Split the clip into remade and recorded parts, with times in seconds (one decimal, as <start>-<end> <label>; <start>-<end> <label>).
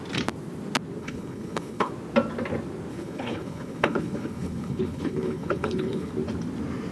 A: 0.0-1.0 recorded; 1.0-1.9 remade; 1.9-2.9 recorded; 2.9-6.1 remade; 6.1-6.9 recorded